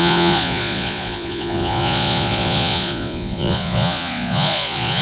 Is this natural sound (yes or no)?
no